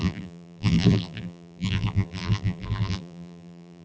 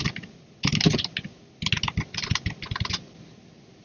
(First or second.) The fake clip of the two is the first